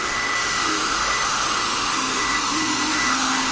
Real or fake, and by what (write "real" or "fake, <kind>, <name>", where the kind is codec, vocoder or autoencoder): fake, autoencoder, DAC-VAE